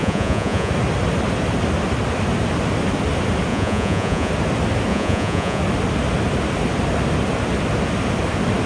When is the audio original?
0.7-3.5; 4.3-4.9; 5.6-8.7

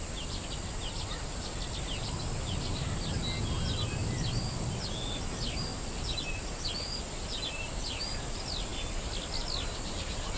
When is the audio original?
0.0-10.4